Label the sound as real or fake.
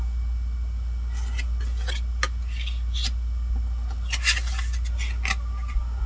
real